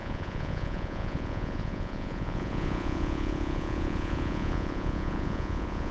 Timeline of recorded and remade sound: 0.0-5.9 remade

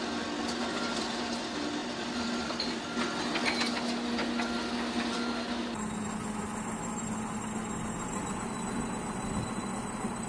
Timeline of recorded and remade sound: 0.0-1.8 recorded; 1.8-2.8 remade; 2.8-10.3 recorded